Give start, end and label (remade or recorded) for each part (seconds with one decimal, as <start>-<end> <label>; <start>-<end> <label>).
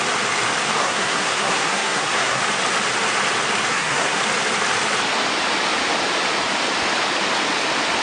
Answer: 0.0-0.8 recorded; 0.8-2.4 remade; 2.4-3.7 recorded; 3.7-4.2 remade; 4.2-8.0 recorded